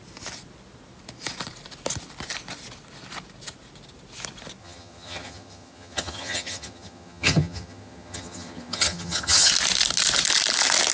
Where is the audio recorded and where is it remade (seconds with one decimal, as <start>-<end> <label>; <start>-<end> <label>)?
0.0-4.6 recorded; 4.6-9.5 remade; 9.5-10.9 recorded